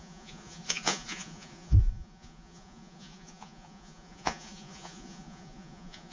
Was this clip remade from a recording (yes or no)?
yes